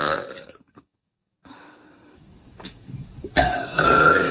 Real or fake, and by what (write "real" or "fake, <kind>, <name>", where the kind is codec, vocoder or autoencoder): fake, codec, DAC